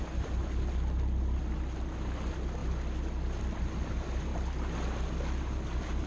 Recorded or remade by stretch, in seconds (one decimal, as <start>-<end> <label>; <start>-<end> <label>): 0.0-6.1 recorded